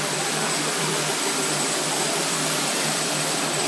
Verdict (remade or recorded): remade